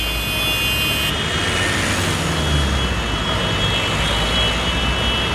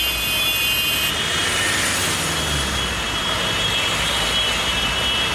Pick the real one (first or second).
first